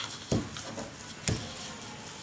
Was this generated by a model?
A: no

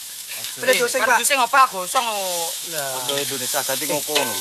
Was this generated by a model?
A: yes